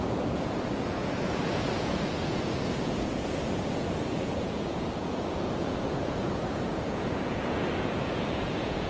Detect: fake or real fake